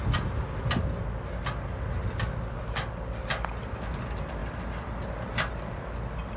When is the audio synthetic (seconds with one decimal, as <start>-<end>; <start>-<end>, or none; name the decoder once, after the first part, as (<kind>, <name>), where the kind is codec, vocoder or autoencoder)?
none